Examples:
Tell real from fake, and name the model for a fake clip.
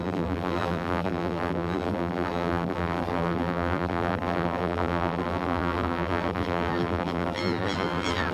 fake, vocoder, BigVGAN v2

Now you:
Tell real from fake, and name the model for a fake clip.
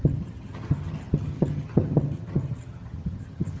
fake, vocoder, HiFi-GAN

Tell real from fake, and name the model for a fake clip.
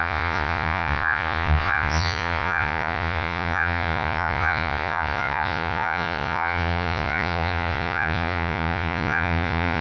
fake, vocoder, Vocos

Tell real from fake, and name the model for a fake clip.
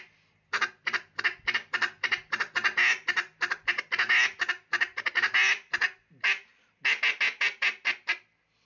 real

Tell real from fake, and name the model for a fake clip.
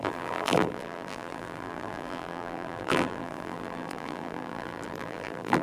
fake, vocoder, BigVGAN v2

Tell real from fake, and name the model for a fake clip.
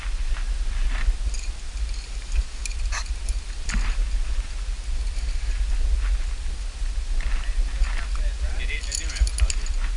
real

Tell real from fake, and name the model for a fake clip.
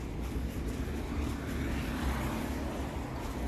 real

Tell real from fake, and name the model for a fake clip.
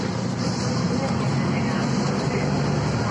real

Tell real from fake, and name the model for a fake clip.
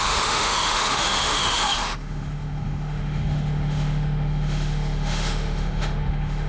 fake, autoencoder, DAC-VAE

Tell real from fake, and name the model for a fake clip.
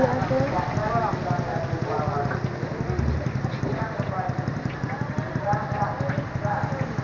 real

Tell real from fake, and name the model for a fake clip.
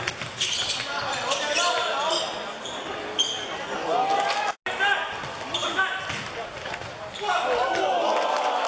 real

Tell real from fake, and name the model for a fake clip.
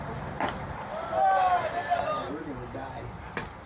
real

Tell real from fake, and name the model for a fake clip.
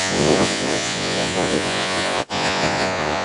fake, vocoder, Vocos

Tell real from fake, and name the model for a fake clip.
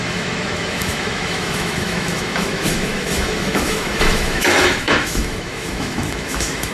fake, autoencoder, DAC-VAE